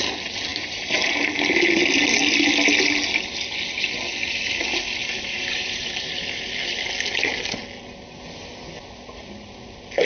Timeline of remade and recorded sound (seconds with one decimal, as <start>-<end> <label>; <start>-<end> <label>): 0.0-0.5 recorded; 0.5-1.3 remade; 1.3-5.0 recorded; 5.0-6.2 remade; 6.2-10.0 recorded

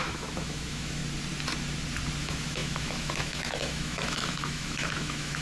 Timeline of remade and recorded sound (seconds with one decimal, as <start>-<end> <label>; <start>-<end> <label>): 0.0-1.0 remade; 1.0-2.2 recorded; 2.2-5.4 remade

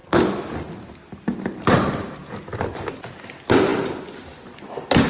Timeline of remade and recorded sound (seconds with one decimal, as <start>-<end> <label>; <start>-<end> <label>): 0.0-1.1 recorded; 1.1-5.1 remade

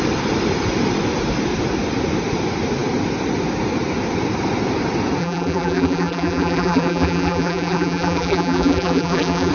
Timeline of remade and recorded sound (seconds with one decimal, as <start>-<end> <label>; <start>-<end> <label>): 0.0-5.2 recorded; 5.2-9.5 remade

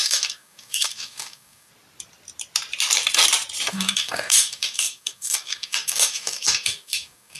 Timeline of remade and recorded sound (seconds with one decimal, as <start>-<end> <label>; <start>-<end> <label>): 0.0-1.7 remade; 1.7-3.7 recorded; 3.7-7.4 remade

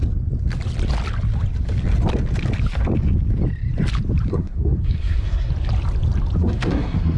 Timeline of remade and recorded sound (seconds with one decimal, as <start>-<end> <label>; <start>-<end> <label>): 0.0-4.3 recorded; 4.3-5.5 remade; 5.5-6.4 recorded; 6.4-7.2 remade

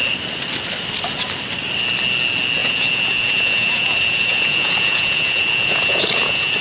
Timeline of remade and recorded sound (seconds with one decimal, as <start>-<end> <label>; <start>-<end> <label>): 0.0-2.6 recorded; 2.6-6.6 remade